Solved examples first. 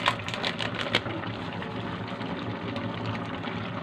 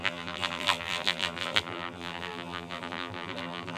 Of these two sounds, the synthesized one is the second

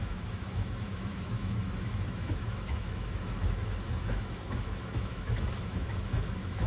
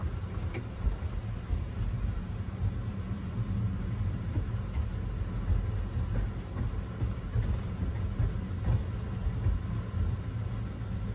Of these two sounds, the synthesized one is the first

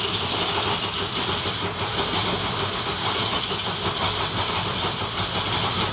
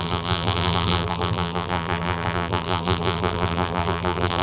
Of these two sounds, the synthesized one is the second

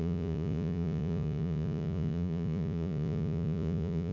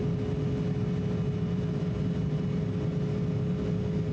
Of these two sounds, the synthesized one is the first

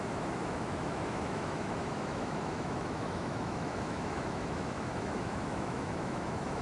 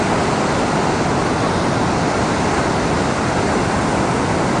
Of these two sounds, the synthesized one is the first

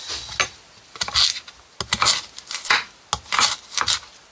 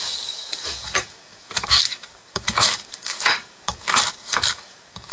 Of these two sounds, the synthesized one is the second